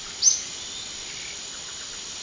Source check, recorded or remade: recorded